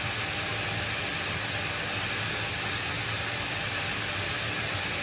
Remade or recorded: recorded